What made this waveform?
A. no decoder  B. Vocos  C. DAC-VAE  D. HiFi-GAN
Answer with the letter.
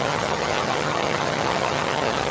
D